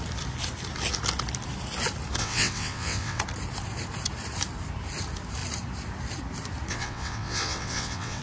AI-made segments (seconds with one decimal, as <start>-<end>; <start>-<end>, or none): 2.2-3.2; 6.7-8.2